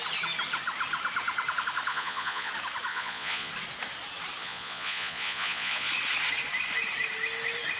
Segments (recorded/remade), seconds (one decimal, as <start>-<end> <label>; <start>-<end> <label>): 0.0-1.9 recorded; 1.9-2.5 remade; 2.5-2.9 recorded; 2.9-3.5 remade; 3.5-4.4 recorded; 4.4-5.9 remade; 5.9-7.8 recorded